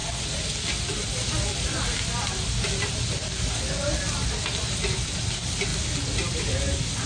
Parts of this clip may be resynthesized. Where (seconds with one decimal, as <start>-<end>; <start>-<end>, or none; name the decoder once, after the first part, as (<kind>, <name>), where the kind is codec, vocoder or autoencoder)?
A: none